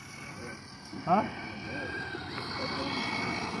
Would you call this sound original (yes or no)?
yes